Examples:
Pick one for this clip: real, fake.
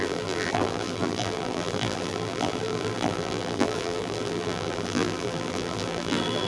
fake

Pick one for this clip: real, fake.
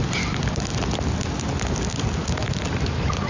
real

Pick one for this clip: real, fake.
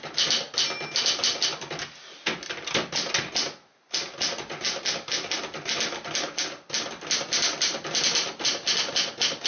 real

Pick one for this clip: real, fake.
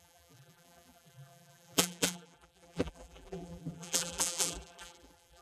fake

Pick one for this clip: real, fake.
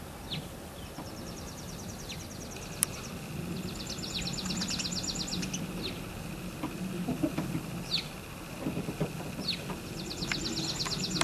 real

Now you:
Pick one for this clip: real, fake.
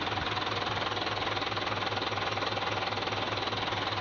real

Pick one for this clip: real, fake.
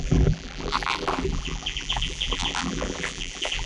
fake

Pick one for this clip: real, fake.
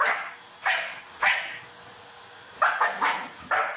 real